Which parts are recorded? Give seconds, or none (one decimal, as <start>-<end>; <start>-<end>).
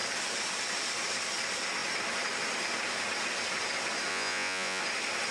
0.0-4.1; 4.8-5.3